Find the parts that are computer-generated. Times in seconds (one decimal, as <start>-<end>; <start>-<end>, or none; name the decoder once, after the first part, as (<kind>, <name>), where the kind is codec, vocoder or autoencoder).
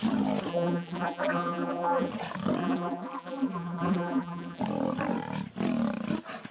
0.5-2.1 (vocoder, BigVGAN v2); 2.6-4.6